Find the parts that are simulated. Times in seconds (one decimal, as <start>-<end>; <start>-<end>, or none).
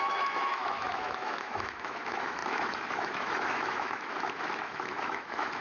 0.0-5.6